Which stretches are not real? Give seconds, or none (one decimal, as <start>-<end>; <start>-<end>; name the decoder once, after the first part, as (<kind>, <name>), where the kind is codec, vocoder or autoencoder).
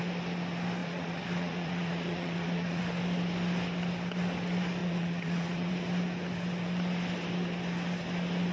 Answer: 0.8-2.8 (vocoder, Vocos); 4.8-5.7